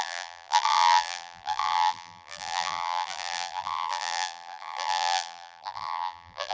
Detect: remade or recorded remade